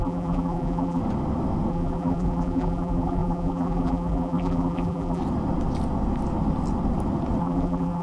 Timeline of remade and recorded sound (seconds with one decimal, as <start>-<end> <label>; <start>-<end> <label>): 0.0-1.0 remade; 1.0-1.7 recorded; 1.7-5.2 remade; 5.2-7.4 recorded; 7.4-8.0 remade